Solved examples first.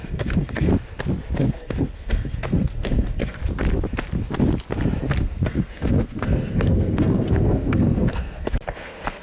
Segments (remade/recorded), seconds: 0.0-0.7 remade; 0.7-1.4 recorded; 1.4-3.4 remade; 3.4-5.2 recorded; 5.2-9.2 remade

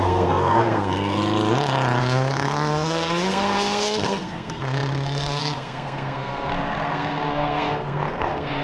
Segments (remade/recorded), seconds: 0.0-1.2 remade; 1.2-2.0 recorded; 2.0-8.6 remade

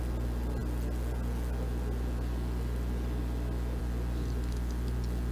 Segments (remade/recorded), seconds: 0.0-5.3 recorded

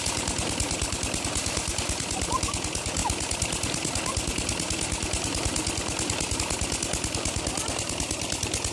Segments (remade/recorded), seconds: 0.0-8.7 recorded